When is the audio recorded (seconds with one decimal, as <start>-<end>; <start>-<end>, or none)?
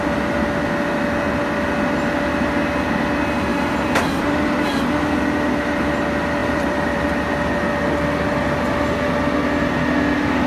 0.0-3.5; 4.4-6.4; 7.0-10.5